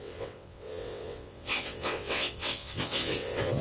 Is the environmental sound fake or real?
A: fake